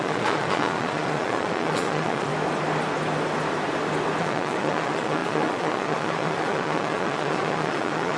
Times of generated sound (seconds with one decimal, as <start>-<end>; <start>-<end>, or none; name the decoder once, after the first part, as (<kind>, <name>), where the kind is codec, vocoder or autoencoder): 0.0-2.3 (vocoder, Vocos); 4.2-8.2

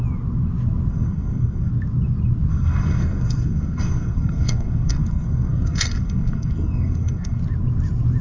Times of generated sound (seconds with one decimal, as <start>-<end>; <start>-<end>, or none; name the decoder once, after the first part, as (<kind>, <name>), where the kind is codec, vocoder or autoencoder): 0.9-1.7 (codec, SNAC); 2.5-7.4

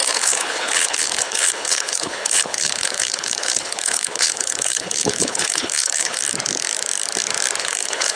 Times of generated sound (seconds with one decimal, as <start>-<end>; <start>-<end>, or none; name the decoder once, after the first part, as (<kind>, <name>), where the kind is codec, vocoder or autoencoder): 0.0-6.2 (codec, HILCodec); 7.6-8.2

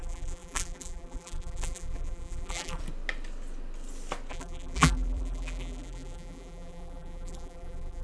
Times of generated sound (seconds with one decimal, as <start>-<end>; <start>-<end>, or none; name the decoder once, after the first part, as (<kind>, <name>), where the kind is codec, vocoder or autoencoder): 0.0-2.8 (vocoder, BigVGAN v2); 4.3-8.0

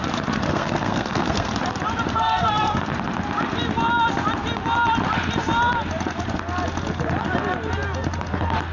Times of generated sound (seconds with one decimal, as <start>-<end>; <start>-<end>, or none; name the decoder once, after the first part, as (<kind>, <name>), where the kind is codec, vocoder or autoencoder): 0.5-1.5 (codec, SNAC); 2.1-2.9

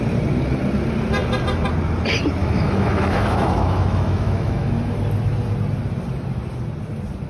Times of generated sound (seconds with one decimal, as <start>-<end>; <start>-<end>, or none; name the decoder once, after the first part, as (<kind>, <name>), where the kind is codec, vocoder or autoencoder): 2.4-4.7 (autoencoder, DAC-VAE)